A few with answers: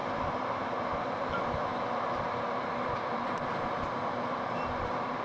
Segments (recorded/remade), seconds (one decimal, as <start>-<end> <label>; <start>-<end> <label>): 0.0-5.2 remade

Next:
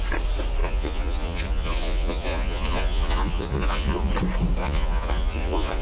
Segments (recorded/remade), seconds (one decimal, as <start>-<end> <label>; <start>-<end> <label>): 0.0-0.6 recorded; 0.6-4.1 remade; 4.1-4.6 recorded; 4.6-5.8 remade

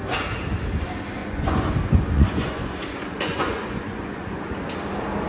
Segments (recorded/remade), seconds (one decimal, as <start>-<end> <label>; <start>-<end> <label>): 0.0-1.2 recorded; 1.2-4.4 remade; 4.4-5.3 recorded

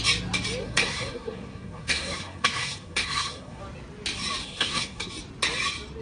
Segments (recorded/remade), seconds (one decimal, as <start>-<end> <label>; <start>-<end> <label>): 0.0-0.6 recorded; 0.6-3.6 remade; 3.6-4.4 recorded; 4.4-5.1 remade; 5.1-6.0 recorded

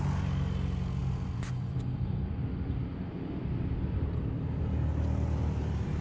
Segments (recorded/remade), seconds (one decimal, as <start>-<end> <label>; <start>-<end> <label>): 0.0-1.0 recorded; 1.0-4.6 remade; 4.6-6.0 recorded